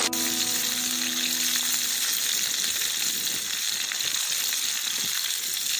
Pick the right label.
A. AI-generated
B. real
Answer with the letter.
B